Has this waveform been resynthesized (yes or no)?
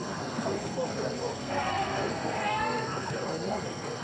yes